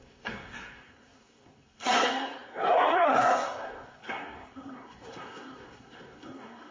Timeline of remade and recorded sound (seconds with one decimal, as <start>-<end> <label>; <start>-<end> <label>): 0.0-6.7 remade